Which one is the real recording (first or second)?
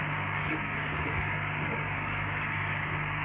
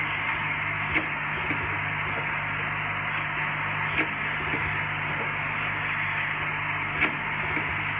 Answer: second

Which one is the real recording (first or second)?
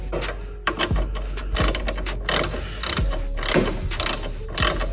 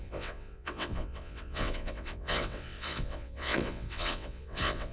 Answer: first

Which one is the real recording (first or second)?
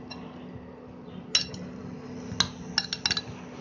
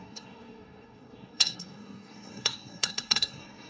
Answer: first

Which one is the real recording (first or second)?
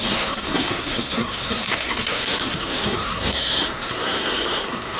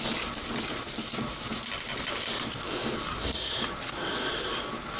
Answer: second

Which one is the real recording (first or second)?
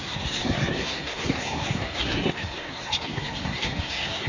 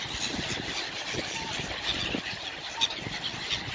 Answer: second